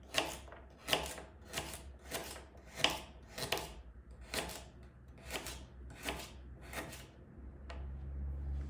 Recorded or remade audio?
recorded